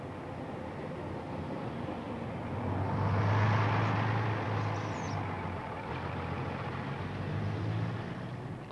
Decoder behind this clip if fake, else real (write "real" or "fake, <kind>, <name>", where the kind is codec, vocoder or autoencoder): real